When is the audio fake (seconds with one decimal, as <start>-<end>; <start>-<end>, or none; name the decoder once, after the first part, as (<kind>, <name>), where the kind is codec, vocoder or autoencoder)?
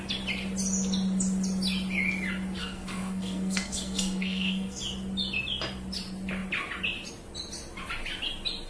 2.6-4.8 (codec, SNAC)